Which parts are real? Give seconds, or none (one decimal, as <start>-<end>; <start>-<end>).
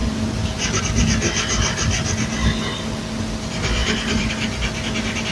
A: 0.0-3.8; 4.3-5.3